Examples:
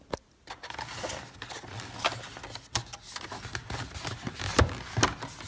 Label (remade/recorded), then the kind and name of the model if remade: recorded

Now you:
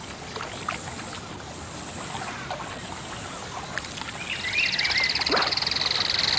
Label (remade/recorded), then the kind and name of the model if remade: recorded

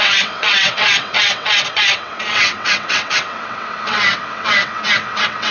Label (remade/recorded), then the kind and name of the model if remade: remade, vocoder, WaveNeXt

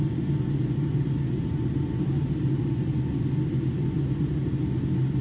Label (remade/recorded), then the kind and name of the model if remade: recorded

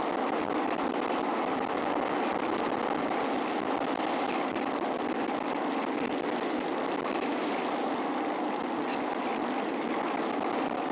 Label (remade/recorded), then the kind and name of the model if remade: recorded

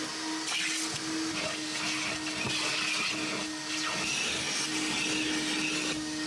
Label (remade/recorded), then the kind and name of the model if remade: recorded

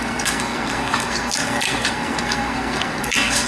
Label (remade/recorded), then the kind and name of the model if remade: remade, codec, SNAC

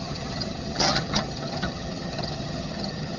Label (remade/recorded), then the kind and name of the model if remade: remade, vocoder, HiFi-GAN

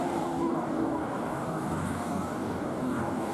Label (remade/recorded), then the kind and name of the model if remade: remade, codec, DAC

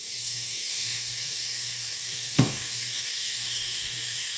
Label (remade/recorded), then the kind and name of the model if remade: remade, codec, DAC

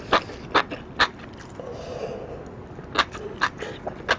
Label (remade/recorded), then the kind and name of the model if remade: recorded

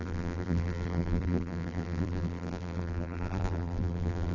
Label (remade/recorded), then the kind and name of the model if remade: remade, vocoder, BigVGAN v2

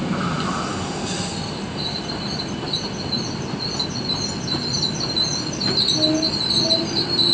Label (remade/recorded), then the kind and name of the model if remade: recorded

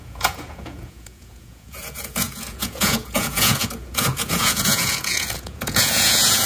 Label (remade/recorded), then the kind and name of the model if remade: remade, vocoder, Vocos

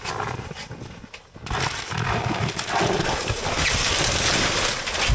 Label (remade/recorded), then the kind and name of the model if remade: recorded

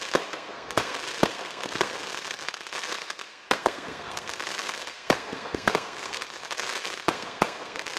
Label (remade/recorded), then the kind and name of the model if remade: remade, codec, SNAC